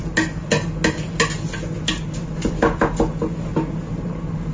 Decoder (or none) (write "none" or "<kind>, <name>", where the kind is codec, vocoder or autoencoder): none